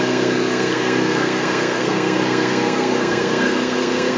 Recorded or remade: remade